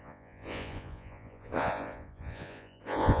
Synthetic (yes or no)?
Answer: yes